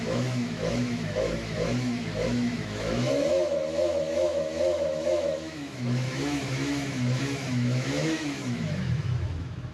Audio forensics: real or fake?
fake